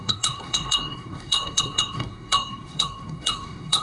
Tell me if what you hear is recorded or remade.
remade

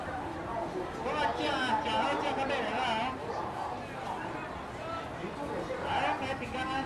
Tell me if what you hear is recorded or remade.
recorded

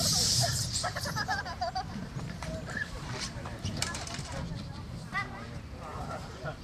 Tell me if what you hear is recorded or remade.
remade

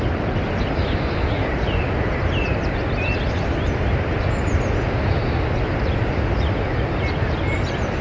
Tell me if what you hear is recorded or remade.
recorded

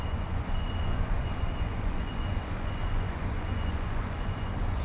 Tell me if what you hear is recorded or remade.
remade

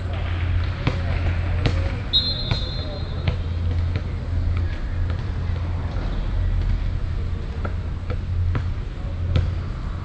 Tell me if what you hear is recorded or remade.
recorded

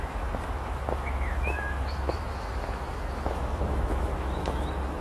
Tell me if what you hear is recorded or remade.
remade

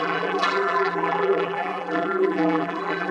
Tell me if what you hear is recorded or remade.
remade